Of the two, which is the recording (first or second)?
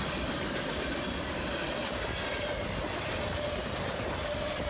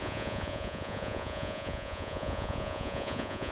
first